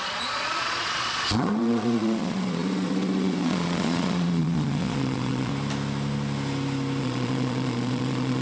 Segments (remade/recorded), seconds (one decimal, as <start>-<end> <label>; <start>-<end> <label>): 0.0-5.5 remade; 5.5-7.0 recorded; 7.0-8.4 remade